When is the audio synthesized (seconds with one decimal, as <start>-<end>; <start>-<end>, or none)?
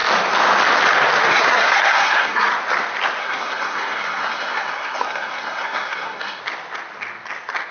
1.3-2.5; 3.2-6.4